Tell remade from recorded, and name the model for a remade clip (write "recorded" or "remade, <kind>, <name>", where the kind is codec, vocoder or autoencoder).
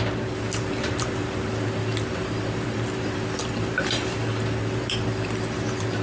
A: recorded